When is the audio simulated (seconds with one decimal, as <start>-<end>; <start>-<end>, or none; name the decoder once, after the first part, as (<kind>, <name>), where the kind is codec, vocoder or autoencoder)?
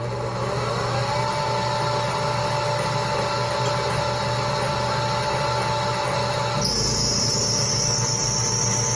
none